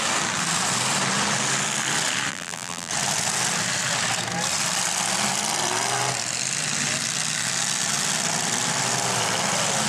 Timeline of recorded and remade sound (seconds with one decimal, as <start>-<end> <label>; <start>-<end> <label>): 0.0-2.3 recorded; 2.3-2.9 remade; 2.9-9.9 recorded